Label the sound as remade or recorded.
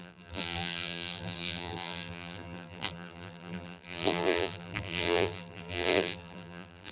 remade